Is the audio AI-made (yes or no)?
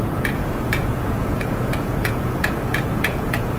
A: yes